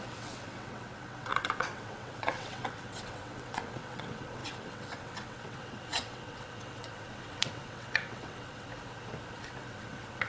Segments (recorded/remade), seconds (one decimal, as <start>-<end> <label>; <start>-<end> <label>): 0.0-8.7 remade; 8.7-9.3 recorded; 9.3-10.3 remade